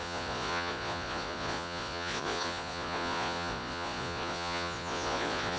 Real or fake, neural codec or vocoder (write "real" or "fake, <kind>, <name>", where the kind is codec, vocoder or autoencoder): fake, vocoder, Vocos